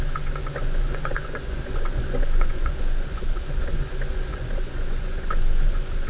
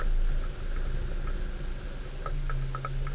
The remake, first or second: first